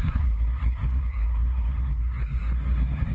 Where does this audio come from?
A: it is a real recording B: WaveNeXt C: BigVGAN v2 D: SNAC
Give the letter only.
D